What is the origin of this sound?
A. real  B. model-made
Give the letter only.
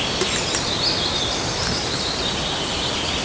A